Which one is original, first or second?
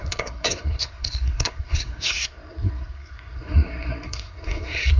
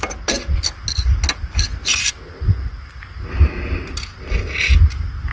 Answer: second